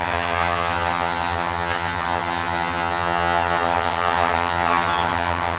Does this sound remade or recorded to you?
remade